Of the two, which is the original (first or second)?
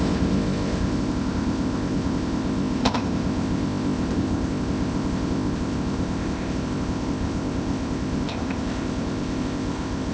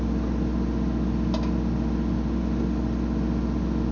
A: second